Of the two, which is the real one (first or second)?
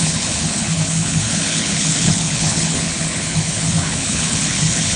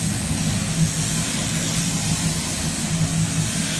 second